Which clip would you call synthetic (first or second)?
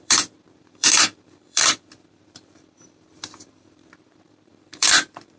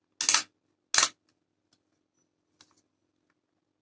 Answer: first